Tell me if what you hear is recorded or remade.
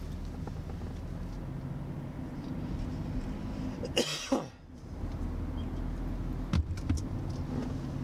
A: recorded